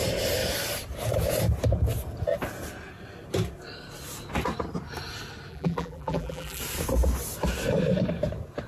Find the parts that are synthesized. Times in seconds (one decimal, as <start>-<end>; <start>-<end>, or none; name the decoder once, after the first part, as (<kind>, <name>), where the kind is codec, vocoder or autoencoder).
5.5-6.6 (vocoder, BigVGAN v2)